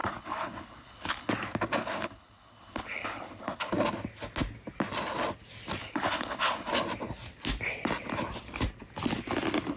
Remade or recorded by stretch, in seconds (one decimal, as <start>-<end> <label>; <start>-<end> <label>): 0.0-1.3 remade; 1.3-1.8 recorded; 1.8-3.7 remade; 3.7-5.8 recorded; 5.8-6.7 remade; 6.7-9.8 recorded